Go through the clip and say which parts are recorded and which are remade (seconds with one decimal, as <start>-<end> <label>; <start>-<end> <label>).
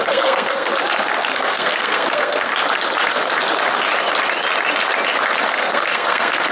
0.0-0.7 remade; 0.7-1.3 recorded; 1.3-2.5 remade; 2.5-5.5 recorded; 5.5-6.5 remade